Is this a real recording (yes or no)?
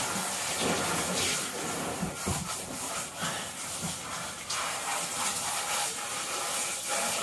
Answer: yes